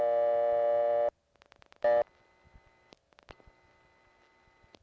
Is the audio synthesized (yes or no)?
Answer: no